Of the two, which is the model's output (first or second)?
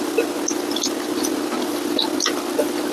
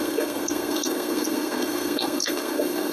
second